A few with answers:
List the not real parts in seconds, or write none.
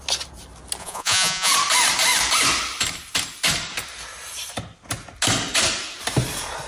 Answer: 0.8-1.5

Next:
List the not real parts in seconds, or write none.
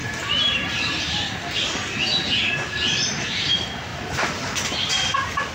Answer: 0.0-1.3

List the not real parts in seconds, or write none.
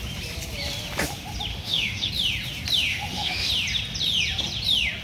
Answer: 1.5-2.1; 2.9-3.5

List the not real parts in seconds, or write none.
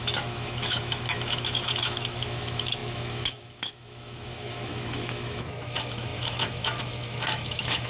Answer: 0.0-7.9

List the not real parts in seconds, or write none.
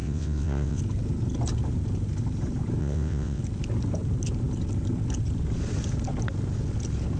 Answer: 0.0-0.8; 2.8-3.4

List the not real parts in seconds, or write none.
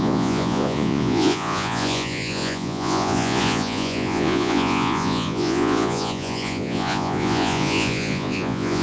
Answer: 0.0-8.8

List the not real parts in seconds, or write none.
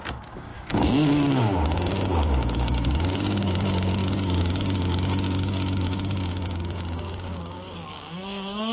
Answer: 0.0-8.7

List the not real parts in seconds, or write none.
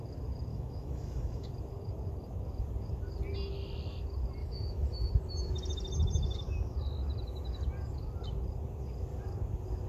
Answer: 0.5-1.5; 4.4-5.1